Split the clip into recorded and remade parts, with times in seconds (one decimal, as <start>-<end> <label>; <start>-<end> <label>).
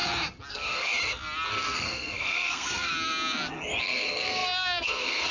0.0-0.5 recorded; 0.5-0.9 remade; 0.9-1.5 recorded; 1.5-2.9 remade; 2.9-3.8 recorded; 3.8-5.3 remade